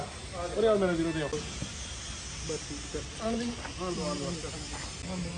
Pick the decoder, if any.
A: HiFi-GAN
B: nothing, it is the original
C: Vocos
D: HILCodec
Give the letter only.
B